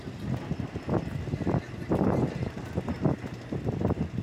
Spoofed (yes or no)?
yes